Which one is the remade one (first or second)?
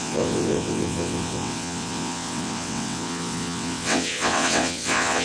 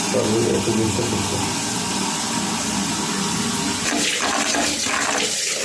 first